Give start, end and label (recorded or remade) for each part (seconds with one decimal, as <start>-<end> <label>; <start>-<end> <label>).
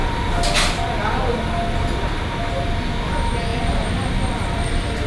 0.0-3.5 recorded; 3.5-5.1 remade